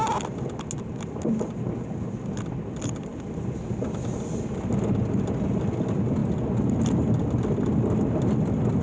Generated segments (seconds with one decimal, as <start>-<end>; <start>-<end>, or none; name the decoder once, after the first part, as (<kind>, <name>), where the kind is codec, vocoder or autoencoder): 3.1-5.6 (vocoder, BigVGAN v2)